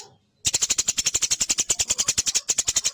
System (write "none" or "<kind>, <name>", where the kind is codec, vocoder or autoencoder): none